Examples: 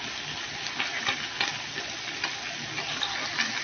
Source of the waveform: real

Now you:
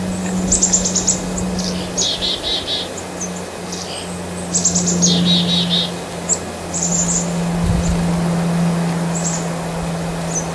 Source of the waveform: real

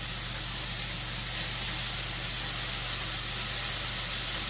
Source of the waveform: real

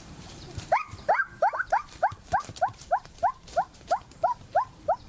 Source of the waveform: fake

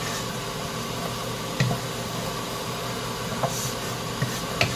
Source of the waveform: real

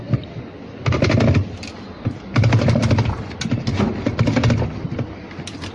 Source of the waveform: real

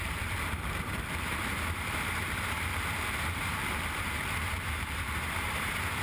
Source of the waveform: fake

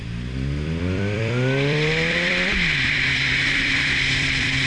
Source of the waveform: fake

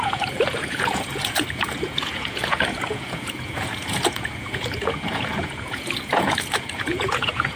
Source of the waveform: fake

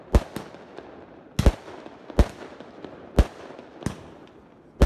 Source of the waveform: real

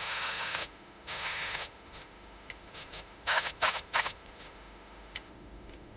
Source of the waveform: fake